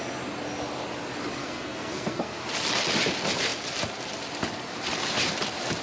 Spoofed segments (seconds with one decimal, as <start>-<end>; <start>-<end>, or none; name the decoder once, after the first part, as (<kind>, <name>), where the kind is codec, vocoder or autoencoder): 1.4-2.4 (codec, SNAC)